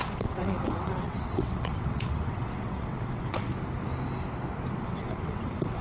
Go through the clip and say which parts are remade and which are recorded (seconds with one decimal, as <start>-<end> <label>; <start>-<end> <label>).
0.0-3.5 remade; 3.5-4.8 recorded; 4.8-5.8 remade

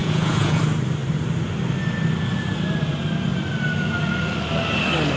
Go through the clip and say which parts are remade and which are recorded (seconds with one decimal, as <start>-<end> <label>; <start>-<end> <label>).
0.0-0.6 remade; 0.6-5.2 recorded